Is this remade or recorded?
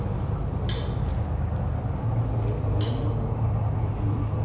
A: recorded